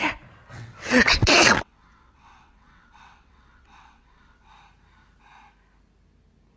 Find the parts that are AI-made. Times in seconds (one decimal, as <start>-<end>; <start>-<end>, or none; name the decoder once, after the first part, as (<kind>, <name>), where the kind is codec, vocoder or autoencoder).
0.5-4.5 (vocoder, WaveNeXt)